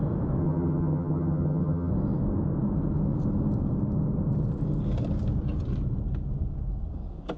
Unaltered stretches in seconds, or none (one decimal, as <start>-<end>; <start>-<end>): 0.0-0.4; 1.9-7.4